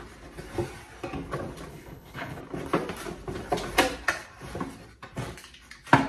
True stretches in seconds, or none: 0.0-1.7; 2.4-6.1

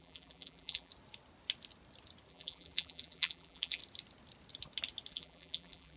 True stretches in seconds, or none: 0.9-2.3; 3.8-5.1

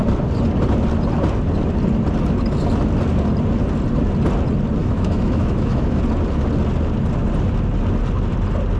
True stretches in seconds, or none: 0.0-4.8; 6.0-8.8

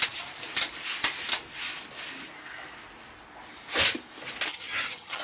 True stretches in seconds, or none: 0.0-4.5

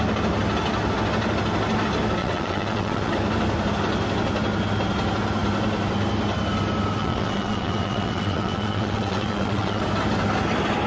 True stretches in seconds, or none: 0.0-2.2; 3.1-7.0; 9.8-10.9

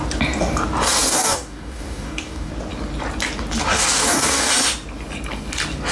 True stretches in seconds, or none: 0.0-1.1; 2.5-3.7; 4.5-5.9

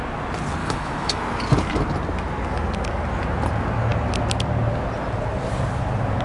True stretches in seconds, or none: 0.0-0.6; 1.2-6.2

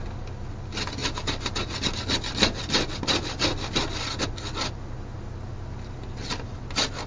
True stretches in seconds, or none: 0.0-7.1